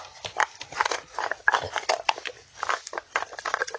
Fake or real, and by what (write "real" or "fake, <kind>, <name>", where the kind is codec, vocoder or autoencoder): real